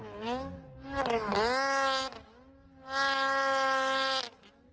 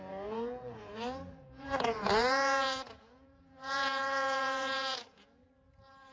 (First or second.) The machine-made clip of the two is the second